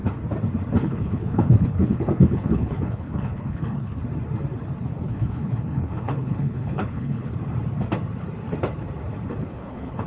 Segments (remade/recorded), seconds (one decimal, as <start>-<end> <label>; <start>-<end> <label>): 0.0-0.8 recorded; 0.8-4.0 remade; 4.0-4.8 recorded; 4.8-7.3 remade; 7.3-9.4 recorded; 9.4-10.1 remade